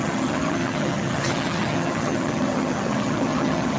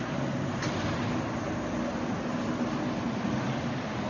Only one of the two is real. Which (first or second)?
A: second